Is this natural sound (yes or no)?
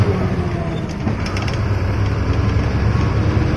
no